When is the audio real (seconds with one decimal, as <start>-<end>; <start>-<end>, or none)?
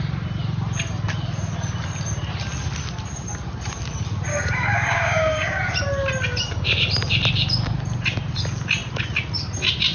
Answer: 0.0-4.3; 5.6-9.9